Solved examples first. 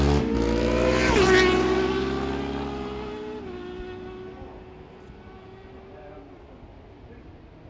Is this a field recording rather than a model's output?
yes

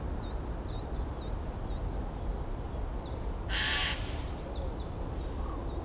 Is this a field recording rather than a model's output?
yes